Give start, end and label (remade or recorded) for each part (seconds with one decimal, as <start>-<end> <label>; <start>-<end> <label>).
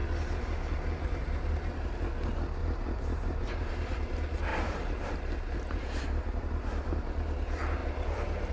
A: 0.0-2.6 recorded; 2.6-3.7 remade; 3.7-4.5 recorded; 4.5-6.4 remade; 6.4-8.5 recorded